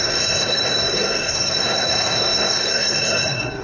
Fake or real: fake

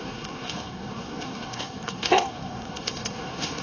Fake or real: fake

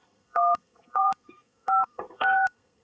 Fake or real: fake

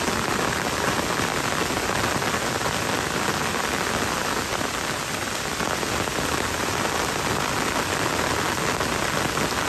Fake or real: real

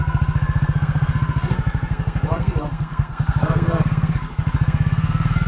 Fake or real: fake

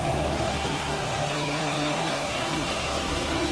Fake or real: fake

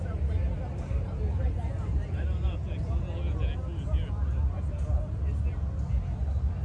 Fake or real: real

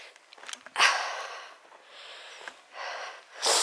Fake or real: real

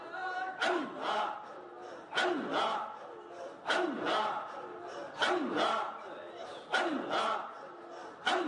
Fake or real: real